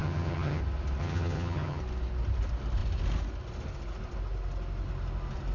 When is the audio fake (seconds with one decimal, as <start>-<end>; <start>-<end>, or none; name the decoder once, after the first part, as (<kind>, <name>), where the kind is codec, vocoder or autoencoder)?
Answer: 0.0-0.6 (vocoder, HiFi-GAN); 1.0-1.8